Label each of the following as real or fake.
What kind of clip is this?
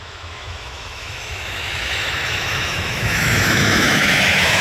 fake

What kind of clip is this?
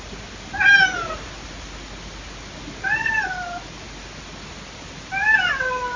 real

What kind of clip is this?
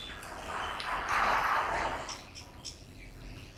real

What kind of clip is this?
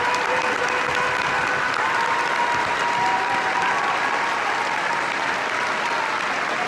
real